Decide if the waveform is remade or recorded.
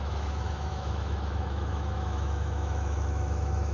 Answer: remade